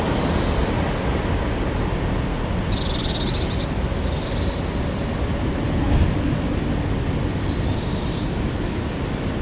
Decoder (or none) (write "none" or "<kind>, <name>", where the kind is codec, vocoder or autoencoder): none